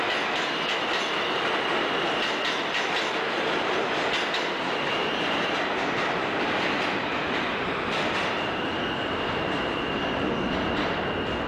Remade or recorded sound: recorded